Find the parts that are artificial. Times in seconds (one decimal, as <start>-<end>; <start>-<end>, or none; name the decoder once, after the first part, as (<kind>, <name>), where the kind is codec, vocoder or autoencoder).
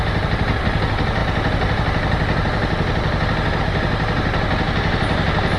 none